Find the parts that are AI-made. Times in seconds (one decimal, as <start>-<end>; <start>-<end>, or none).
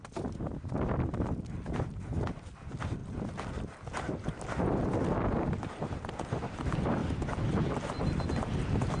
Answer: none